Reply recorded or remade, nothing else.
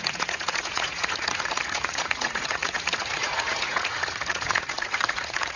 remade